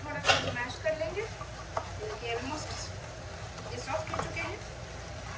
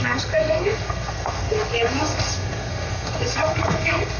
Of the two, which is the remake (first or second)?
second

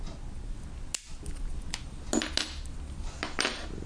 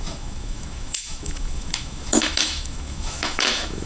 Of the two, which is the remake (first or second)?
second